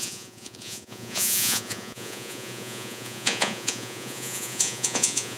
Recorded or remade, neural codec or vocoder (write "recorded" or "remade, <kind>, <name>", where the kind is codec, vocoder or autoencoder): remade, vocoder, Vocos